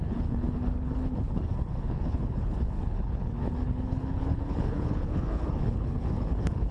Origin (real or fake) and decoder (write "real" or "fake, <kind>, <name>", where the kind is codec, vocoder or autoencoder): fake, codec, HILCodec